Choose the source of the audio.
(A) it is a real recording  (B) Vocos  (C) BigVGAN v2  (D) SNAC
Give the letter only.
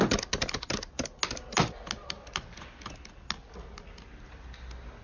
A